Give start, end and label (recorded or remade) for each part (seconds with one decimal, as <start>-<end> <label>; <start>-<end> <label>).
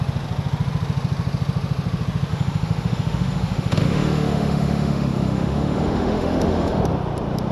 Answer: 0.0-2.3 recorded; 2.3-6.8 remade; 6.8-7.5 recorded